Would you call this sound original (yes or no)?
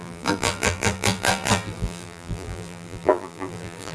no